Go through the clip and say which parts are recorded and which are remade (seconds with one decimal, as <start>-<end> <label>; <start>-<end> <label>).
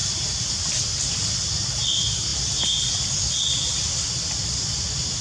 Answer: 0.0-5.2 recorded